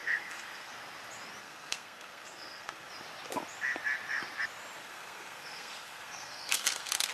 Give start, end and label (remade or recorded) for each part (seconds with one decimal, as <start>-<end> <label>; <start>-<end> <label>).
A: 0.0-0.7 remade; 0.7-1.4 recorded; 1.4-2.9 remade; 2.9-4.8 recorded; 4.8-7.1 remade